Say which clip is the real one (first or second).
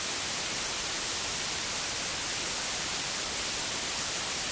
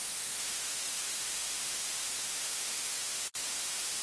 first